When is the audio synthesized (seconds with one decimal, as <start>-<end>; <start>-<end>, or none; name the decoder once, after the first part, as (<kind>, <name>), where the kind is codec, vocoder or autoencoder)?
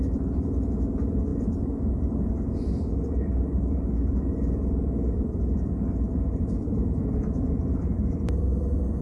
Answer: 0.0-9.0 (vocoder, BigVGAN v2)